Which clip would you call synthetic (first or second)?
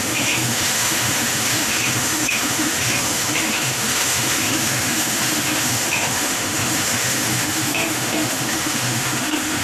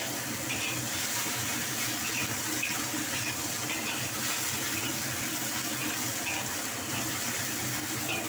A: first